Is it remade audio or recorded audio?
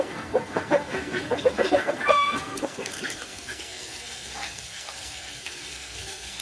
remade